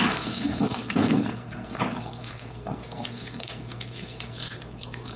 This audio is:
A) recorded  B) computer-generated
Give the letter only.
B